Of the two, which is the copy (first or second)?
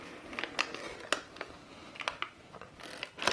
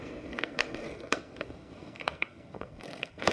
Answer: second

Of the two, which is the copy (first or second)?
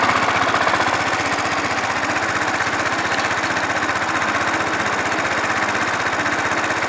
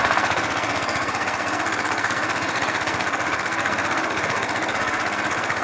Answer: second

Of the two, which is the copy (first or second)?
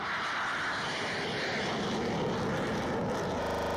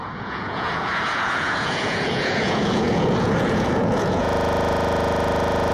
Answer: second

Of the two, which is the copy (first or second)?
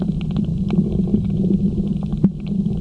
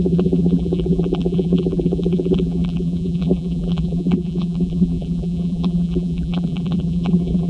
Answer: second